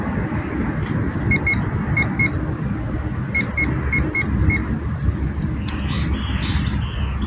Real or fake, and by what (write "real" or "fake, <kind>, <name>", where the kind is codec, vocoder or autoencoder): real